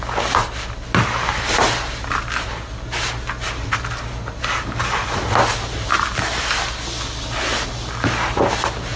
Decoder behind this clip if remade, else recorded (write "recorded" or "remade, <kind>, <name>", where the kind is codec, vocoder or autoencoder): recorded